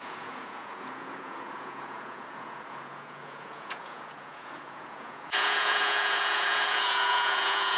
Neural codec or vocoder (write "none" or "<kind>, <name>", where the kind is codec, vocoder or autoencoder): vocoder, Vocos